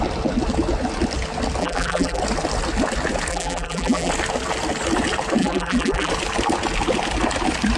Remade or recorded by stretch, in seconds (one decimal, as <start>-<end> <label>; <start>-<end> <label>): 0.0-1.6 recorded; 1.6-2.2 remade; 2.2-3.3 recorded; 3.3-4.1 remade; 4.1-5.4 recorded; 5.4-6.1 remade; 6.1-7.8 recorded